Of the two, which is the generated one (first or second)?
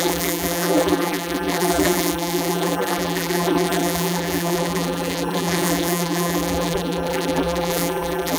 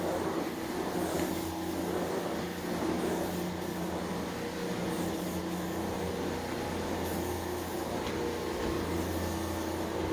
first